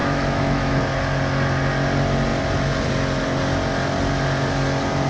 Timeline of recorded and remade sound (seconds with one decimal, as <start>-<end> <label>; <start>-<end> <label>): 0.0-0.7 remade; 0.7-5.1 recorded